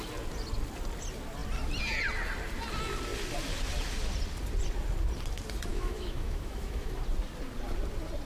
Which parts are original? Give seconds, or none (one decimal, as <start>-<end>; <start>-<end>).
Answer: 0.0-5.7; 7.0-8.2